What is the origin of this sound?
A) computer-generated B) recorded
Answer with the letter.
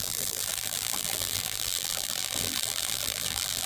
A